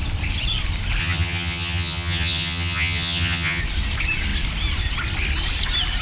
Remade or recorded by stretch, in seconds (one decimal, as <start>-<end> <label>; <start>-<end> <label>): 0.0-1.0 recorded; 1.0-3.6 remade; 3.6-6.0 recorded